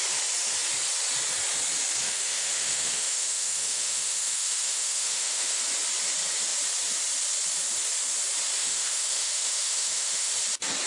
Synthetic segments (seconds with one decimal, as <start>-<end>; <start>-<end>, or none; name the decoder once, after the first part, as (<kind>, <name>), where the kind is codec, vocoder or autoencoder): 2.0-5.6 (autoencoder, DAC-VAE); 8.6-10.3

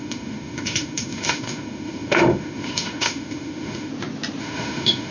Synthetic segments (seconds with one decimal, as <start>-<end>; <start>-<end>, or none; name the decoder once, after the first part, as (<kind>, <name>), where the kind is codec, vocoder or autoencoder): 0.0-3.9 (autoencoder, DAC-VAE); 4.4-5.1

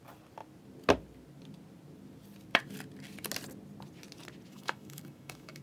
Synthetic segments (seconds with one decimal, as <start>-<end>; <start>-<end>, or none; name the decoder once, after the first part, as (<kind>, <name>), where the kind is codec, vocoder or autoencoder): 4.5-5.6 (autoencoder, DAC-VAE)

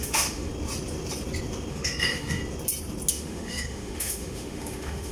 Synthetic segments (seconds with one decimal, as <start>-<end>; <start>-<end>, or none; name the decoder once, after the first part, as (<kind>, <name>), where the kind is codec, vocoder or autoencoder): 0.0-0.5 (autoencoder, DAC-VAE); 1.7-2.4; 3.1-5.1

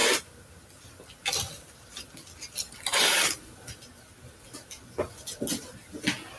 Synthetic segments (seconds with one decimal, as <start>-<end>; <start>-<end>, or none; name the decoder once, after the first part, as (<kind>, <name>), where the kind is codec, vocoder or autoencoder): none

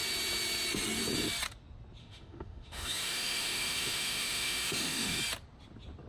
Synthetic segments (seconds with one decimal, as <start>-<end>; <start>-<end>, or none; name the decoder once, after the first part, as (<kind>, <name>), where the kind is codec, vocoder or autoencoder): 2.0-5.2 (autoencoder, DAC-VAE)